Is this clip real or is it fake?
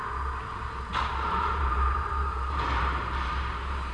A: fake